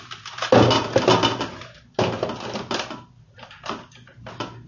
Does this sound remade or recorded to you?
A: recorded